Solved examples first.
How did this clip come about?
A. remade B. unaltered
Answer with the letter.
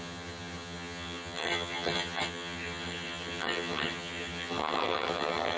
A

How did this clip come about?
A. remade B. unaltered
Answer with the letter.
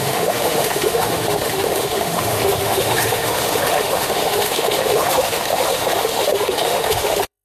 A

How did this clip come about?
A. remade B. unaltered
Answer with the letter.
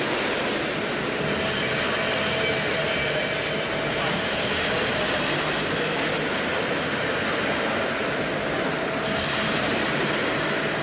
B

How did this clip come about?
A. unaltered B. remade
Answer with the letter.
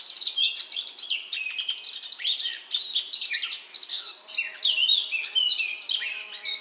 A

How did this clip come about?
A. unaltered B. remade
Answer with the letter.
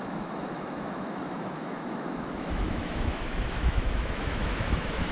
B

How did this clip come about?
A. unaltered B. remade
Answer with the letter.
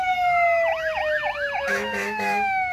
B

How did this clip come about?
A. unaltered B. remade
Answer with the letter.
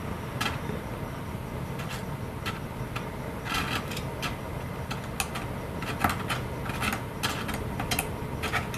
A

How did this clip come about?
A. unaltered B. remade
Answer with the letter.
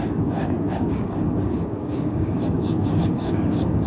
B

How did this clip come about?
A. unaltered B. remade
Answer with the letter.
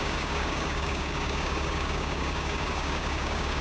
B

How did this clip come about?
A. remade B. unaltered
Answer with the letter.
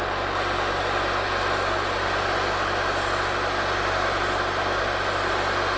B